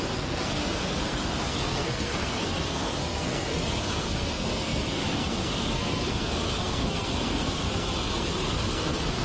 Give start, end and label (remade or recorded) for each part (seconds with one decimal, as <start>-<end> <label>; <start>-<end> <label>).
0.0-9.2 remade